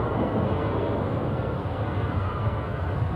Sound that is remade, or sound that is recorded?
remade